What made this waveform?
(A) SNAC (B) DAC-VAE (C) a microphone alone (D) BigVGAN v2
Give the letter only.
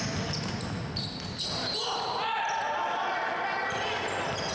C